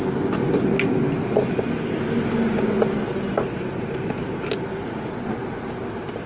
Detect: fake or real real